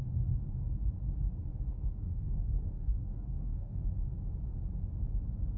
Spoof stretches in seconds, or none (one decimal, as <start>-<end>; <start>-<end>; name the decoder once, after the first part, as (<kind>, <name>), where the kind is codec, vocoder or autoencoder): 1.7-3.8 (codec, DAC)